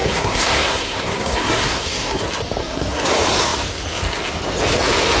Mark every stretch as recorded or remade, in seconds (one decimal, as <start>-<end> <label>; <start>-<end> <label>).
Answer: 0.0-2.2 remade; 2.2-2.6 recorded; 2.6-3.1 remade; 3.1-5.2 recorded